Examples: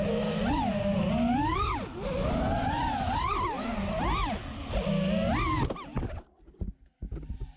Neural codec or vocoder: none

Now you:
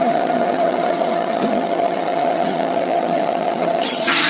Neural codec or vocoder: vocoder, HiFi-GAN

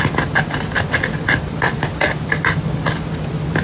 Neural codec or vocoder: none